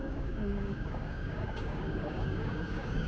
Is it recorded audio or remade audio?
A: remade